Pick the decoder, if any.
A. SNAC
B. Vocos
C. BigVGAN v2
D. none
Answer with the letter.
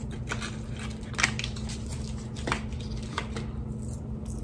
D